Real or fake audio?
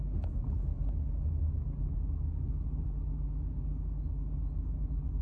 real